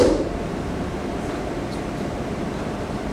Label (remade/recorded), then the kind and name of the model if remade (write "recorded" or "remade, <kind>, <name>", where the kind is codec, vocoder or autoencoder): remade, vocoder, BigVGAN v2